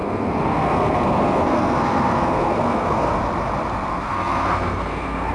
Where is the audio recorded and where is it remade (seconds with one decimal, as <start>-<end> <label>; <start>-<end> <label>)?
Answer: 0.0-3.2 remade; 3.2-3.9 recorded; 3.9-5.3 remade